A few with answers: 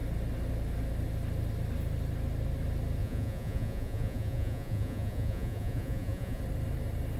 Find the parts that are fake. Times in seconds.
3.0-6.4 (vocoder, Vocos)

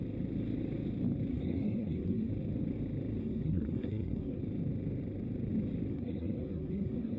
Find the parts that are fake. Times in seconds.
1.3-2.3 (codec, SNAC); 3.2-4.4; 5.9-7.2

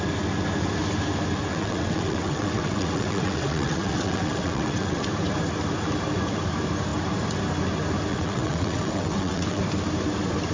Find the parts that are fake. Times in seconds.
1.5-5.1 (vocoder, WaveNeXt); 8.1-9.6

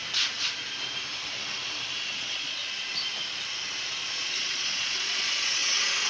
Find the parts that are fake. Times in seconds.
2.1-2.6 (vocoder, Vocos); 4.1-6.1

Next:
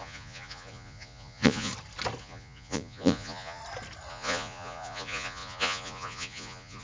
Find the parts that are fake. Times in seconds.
0.0-1.7 (vocoder, Vocos); 2.2-3.6; 4.1-6.8